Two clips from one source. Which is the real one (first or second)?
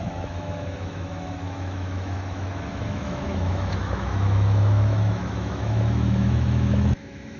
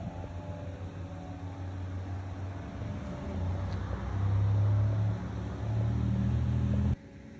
second